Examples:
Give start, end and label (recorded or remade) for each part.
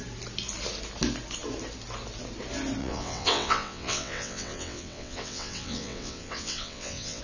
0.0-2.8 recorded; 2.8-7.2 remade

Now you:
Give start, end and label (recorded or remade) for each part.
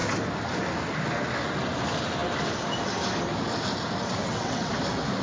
0.0-4.2 recorded; 4.2-4.7 remade; 4.7-5.2 recorded